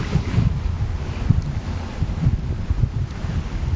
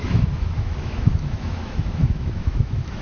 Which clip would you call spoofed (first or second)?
second